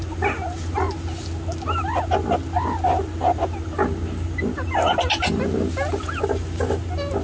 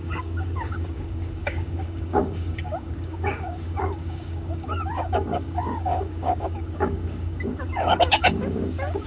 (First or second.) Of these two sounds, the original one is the first